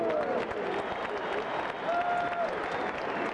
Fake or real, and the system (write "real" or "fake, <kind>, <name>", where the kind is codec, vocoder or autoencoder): real